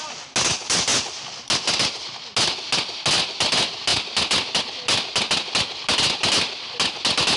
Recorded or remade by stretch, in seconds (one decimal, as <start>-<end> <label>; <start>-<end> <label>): 0.0-7.4 recorded

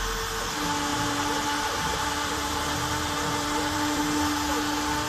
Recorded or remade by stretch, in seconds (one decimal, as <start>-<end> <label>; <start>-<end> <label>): 0.0-0.9 recorded; 0.9-4.0 remade; 4.0-5.1 recorded

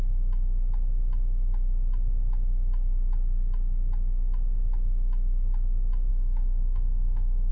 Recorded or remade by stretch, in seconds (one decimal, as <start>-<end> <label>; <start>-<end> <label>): 0.0-6.1 recorded; 6.1-7.5 remade

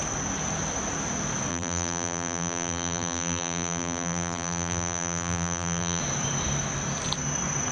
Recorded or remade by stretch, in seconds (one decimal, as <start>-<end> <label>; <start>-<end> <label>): 0.0-1.5 recorded; 1.5-6.0 remade; 6.0-7.7 recorded

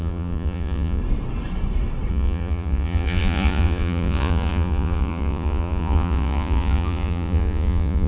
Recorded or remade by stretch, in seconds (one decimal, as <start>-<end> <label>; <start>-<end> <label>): 0.0-1.0 remade; 1.0-2.1 recorded; 2.1-8.1 remade

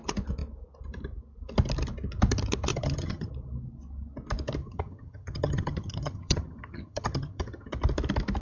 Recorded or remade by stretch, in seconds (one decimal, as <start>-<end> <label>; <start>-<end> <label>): 0.0-2.7 recorded; 2.7-3.3 remade; 3.3-4.6 recorded; 4.6-7.7 remade; 7.7-8.4 recorded

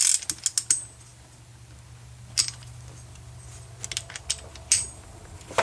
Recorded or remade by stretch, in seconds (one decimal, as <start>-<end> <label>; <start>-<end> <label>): 0.0-5.6 recorded